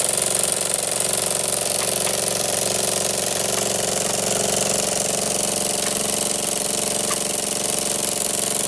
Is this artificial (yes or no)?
no